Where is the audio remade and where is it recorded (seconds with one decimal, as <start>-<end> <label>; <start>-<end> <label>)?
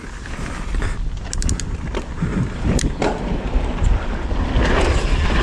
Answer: 0.0-2.3 recorded; 2.3-3.9 remade; 3.9-5.4 recorded